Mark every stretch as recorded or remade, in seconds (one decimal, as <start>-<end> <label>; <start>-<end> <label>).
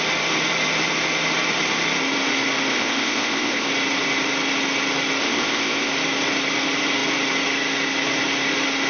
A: 0.0-2.7 recorded; 2.7-3.7 remade; 3.7-5.2 recorded; 5.2-5.9 remade; 5.9-8.9 recorded